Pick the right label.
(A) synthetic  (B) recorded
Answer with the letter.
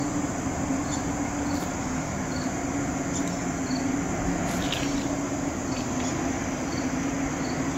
B